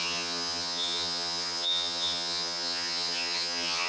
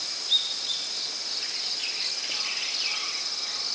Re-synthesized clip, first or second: first